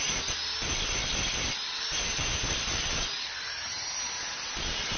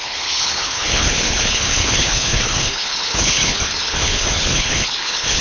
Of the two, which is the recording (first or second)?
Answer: first